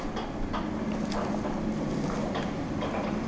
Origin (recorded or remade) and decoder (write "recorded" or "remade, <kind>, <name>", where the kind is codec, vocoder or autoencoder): recorded